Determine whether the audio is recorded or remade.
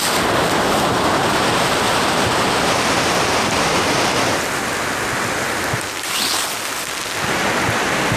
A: recorded